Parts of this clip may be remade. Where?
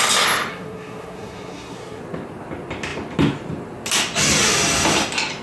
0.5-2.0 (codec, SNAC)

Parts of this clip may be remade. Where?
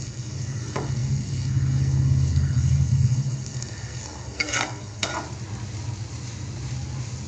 0.0-5.1 (codec, SNAC)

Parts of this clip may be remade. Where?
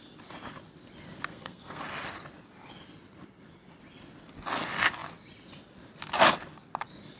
1.3-1.8 (codec, SNAC)